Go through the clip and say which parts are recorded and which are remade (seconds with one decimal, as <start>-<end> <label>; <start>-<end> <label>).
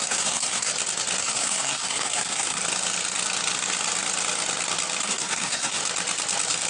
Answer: 0.0-0.7 remade; 0.7-1.2 recorded; 1.2-2.6 remade; 2.6-5.0 recorded; 5.0-5.8 remade; 5.8-6.7 recorded